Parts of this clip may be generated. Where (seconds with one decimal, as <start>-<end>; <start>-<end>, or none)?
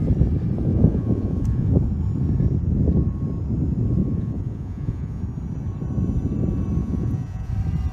0.7-1.9; 4.0-5.2; 6.8-7.5